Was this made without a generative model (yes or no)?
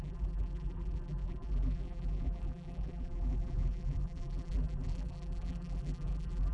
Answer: no